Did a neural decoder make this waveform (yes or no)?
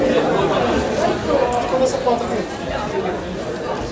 no